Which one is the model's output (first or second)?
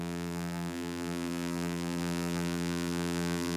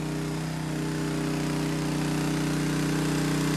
first